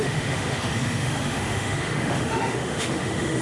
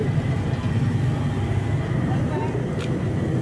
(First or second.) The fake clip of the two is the first